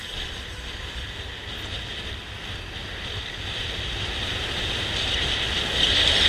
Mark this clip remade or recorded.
recorded